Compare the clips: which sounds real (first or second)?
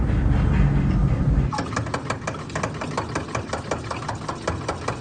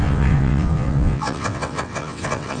first